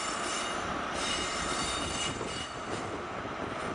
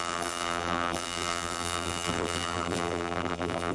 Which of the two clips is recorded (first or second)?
first